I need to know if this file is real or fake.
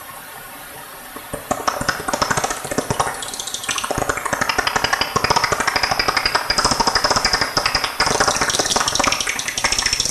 real